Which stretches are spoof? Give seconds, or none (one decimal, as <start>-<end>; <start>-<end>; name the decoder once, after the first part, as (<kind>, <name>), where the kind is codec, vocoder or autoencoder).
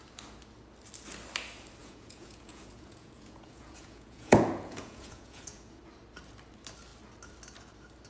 1.8-5.8 (vocoder, Vocos)